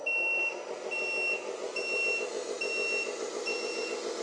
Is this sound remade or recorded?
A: recorded